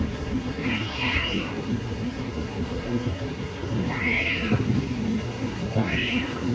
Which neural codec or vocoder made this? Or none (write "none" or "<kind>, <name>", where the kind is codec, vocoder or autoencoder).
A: codec, SNAC